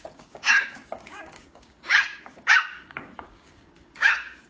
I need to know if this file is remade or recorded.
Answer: remade